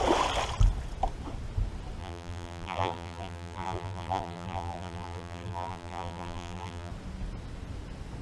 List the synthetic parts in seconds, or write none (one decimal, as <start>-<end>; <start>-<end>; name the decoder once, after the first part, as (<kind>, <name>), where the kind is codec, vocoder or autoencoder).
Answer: 2.0-6.9 (vocoder, BigVGAN v2)